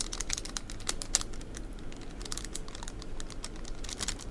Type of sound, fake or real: real